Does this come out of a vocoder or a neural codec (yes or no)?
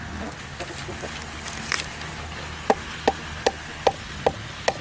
no